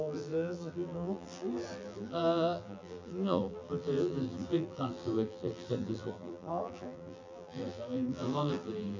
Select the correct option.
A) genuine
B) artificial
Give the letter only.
B